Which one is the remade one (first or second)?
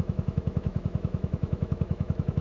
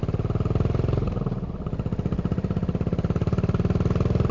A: first